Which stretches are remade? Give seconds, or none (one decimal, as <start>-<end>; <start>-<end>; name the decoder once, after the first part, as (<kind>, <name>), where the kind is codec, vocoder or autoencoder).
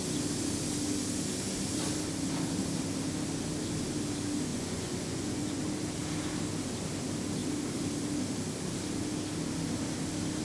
4.5-5.6 (vocoder, Vocos)